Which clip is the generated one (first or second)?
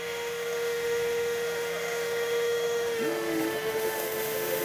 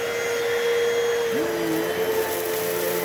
first